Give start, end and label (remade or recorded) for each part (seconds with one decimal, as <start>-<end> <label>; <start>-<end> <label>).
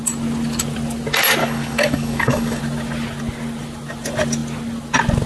0.0-1.4 recorded; 1.4-2.6 remade; 2.6-5.3 recorded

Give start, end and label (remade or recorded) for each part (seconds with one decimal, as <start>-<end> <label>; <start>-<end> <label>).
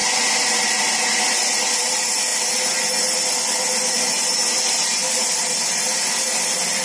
0.0-6.8 recorded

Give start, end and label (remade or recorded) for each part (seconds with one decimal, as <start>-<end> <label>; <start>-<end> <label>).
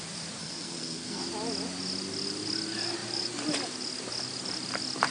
0.0-0.4 recorded; 0.4-1.2 remade; 1.2-5.1 recorded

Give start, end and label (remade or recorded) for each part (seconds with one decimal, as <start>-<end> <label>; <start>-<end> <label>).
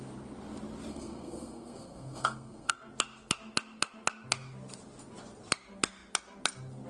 0.0-0.9 recorded; 0.9-2.7 remade; 2.7-6.9 recorded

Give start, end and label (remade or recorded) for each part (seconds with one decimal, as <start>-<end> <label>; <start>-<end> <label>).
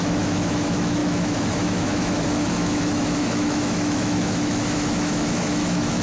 0.0-6.0 remade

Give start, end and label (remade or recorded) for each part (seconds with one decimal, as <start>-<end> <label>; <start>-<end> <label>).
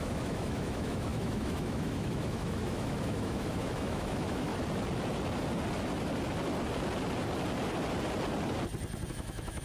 0.0-4.5 remade; 4.5-9.1 recorded; 9.1-9.6 remade